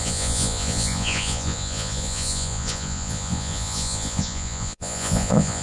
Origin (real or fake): fake